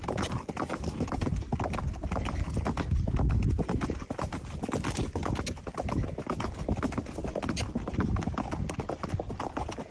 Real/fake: real